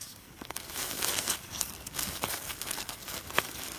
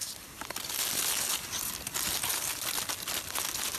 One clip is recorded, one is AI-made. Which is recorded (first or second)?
second